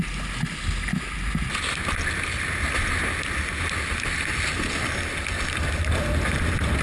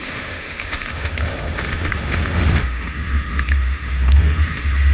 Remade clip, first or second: second